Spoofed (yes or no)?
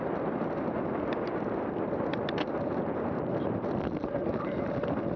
no